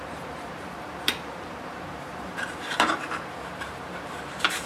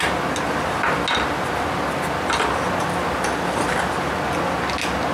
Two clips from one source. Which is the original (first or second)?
second